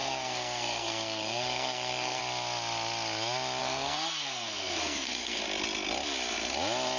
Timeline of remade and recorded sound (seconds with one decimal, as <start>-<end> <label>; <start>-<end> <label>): 0.0-2.2 remade; 2.2-3.6 recorded; 3.6-5.4 remade; 5.4-7.0 recorded